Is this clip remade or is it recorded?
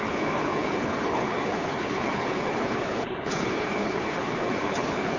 remade